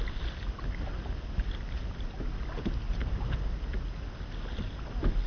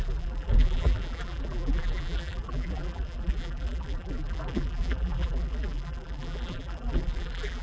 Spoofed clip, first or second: second